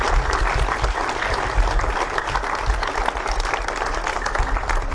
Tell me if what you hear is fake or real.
real